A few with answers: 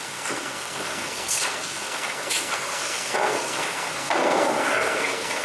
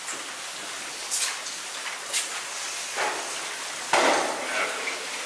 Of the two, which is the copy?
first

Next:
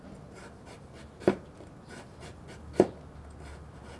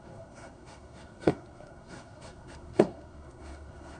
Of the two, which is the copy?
second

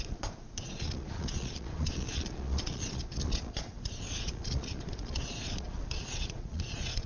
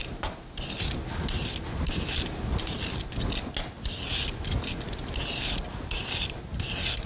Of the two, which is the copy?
first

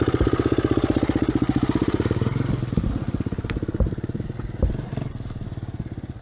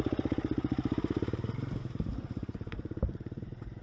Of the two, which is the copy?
second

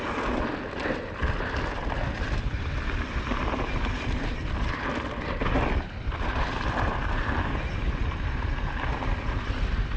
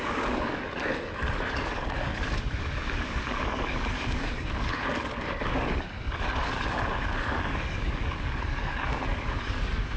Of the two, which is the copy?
second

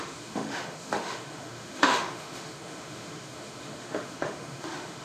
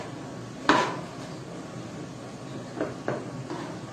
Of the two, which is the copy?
first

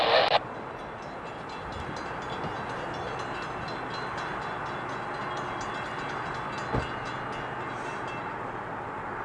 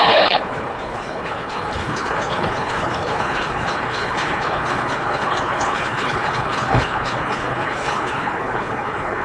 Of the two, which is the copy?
second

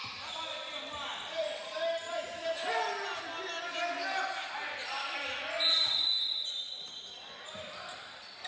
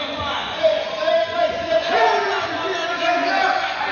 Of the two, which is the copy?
second